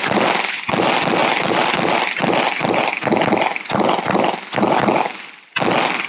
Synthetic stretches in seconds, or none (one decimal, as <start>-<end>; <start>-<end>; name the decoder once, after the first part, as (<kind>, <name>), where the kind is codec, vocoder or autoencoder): 1.2-4.9 (vocoder, BigVGAN v2)